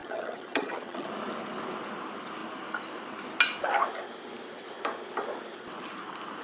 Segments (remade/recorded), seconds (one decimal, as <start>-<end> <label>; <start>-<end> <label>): 0.0-1.1 remade; 1.1-6.4 recorded